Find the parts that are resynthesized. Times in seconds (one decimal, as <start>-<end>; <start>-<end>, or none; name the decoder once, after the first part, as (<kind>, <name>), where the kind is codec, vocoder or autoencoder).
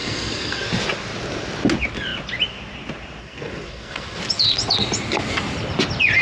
0.0-0.7 (codec, SNAC); 3.2-4.2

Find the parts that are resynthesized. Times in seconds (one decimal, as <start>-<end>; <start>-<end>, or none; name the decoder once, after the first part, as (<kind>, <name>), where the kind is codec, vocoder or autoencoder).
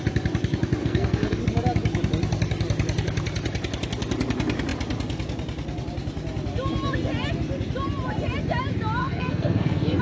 0.8-1.4 (codec, SNAC); 9.0-10.0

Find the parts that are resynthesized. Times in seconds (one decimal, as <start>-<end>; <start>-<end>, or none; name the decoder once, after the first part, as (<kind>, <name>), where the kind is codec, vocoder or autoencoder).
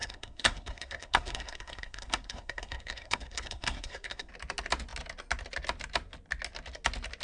0.0-4.3 (codec, SNAC)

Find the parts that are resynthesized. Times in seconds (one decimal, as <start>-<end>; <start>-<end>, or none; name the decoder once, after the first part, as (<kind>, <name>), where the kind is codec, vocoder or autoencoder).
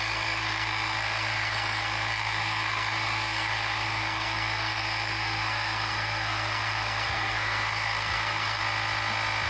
0.0-8.6 (codec, SNAC)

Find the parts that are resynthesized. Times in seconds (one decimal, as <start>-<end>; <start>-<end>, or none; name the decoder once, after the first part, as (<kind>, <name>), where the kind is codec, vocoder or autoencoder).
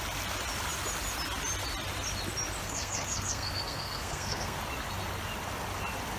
2.6-4.6 (codec, SNAC)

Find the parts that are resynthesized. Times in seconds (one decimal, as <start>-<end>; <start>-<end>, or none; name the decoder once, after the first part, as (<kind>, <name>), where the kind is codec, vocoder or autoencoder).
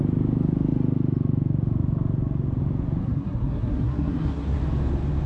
3.0-4.6 (codec, SNAC)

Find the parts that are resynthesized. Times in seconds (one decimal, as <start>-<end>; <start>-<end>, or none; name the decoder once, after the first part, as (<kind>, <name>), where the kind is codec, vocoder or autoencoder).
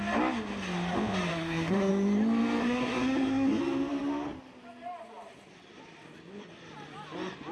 1.3-1.9 (codec, SNAC); 2.6-3.6